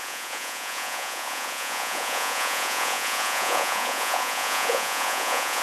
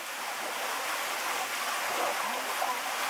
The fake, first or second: first